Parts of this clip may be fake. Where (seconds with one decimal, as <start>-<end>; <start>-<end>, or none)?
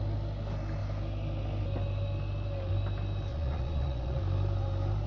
3.3-4.2